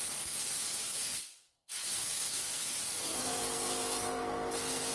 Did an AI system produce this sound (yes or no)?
yes